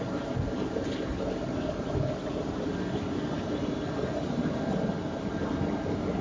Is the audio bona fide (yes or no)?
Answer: yes